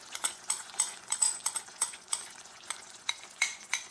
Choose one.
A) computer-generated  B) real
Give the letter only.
A